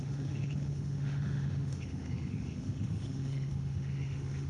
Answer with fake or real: fake